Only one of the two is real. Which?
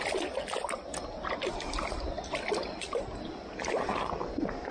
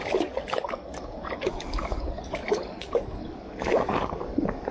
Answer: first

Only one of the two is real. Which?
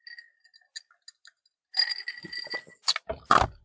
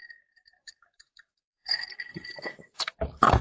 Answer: first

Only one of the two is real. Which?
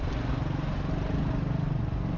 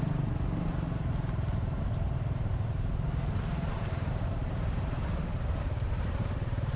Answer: first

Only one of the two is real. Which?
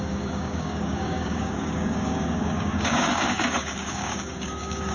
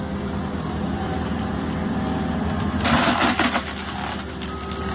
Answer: second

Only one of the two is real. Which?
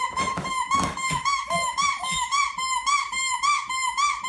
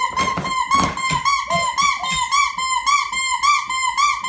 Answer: second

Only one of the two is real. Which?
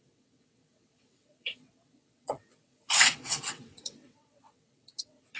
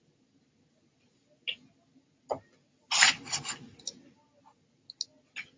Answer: second